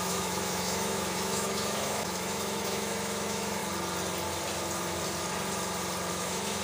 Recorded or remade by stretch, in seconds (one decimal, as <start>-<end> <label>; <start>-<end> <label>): 0.0-3.6 remade; 3.6-6.1 recorded; 6.1-6.6 remade